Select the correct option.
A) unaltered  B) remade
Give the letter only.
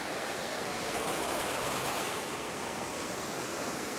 B